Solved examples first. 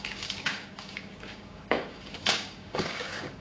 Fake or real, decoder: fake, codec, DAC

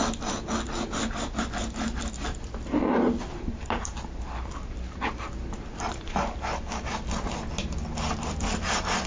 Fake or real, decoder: real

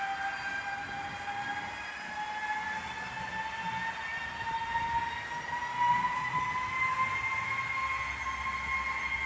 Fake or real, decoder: real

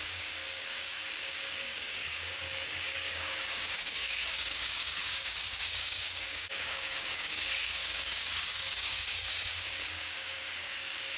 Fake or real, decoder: fake, codec, DAC